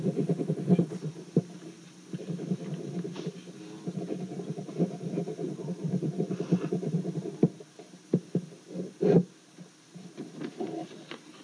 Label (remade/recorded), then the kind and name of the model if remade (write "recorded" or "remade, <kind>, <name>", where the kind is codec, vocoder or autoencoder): recorded